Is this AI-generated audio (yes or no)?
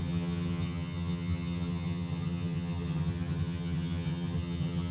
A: yes